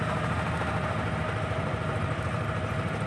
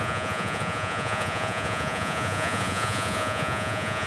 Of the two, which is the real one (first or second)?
first